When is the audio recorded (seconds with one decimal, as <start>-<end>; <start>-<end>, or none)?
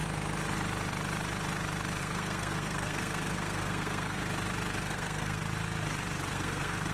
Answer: 0.0-2.0; 4.2-4.8; 5.4-6.3